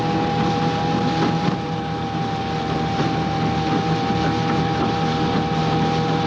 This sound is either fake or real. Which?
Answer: real